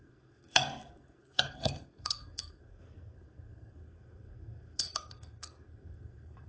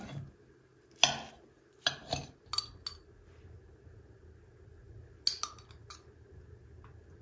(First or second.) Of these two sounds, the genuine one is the second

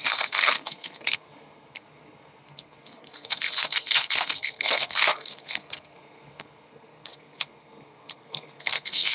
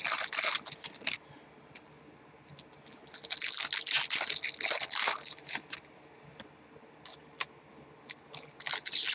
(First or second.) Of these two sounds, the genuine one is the second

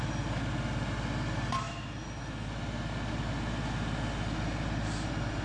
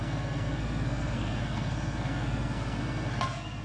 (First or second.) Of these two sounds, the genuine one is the first